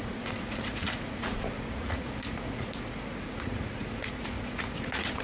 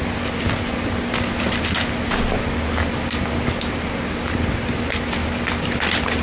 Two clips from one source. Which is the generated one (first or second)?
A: first